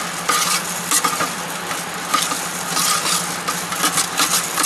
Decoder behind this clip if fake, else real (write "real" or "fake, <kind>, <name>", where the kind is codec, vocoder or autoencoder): real